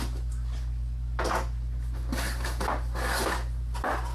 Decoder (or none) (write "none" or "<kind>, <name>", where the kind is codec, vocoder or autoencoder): none